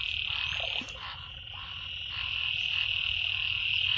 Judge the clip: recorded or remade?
recorded